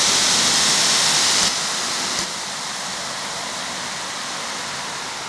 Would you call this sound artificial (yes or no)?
no